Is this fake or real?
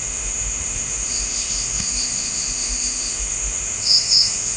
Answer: fake